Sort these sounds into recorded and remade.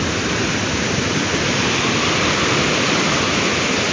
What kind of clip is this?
recorded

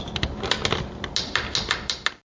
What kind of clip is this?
recorded